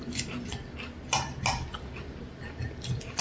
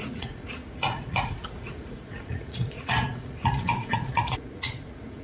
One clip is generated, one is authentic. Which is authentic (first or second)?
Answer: first